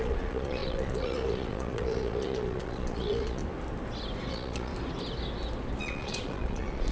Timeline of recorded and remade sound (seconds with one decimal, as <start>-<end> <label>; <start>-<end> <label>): 0.0-3.4 remade; 3.4-4.3 recorded; 4.3-4.7 remade; 4.7-5.8 recorded; 5.8-6.9 remade